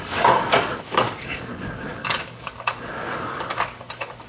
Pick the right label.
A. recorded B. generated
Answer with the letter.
B